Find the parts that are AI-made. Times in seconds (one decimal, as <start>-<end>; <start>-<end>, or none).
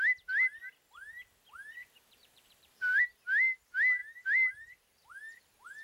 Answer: 1.8-3.0; 4.0-4.8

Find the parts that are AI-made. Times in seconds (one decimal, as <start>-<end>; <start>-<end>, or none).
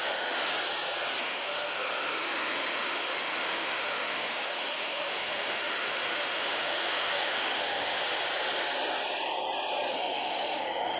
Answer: 0.0-0.5; 1.2-8.0; 9.9-11.0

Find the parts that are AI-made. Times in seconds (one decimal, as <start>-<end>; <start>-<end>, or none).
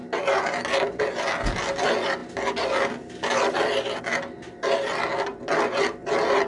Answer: none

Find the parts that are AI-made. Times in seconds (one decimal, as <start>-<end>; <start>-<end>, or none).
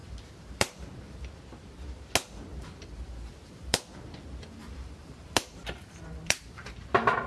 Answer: 0.0-1.2; 2.5-3.8; 4.6-6.7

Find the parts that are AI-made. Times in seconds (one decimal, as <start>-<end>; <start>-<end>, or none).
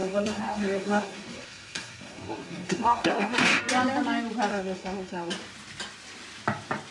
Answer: 0.0-3.6; 4.5-5.3